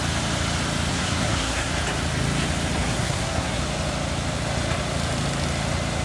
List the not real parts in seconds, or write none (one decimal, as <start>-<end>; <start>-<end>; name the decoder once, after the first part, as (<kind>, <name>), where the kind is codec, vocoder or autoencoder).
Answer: 0.9-1.7 (codec, SNAC); 2.9-3.6